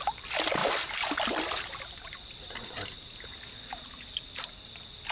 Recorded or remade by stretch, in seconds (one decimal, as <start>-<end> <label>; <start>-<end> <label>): 0.0-5.1 recorded